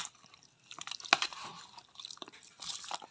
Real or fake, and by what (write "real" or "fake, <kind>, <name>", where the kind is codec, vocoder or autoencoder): real